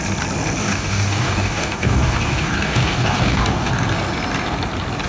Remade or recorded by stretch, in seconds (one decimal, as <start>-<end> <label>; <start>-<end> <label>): 0.0-0.6 recorded; 0.6-3.7 remade; 3.7-5.1 recorded